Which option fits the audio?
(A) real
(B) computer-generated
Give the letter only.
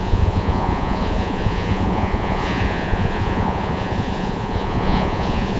B